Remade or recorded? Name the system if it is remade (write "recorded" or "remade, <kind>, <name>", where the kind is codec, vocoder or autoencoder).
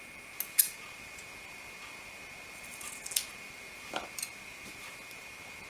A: recorded